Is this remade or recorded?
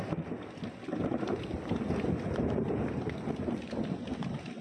recorded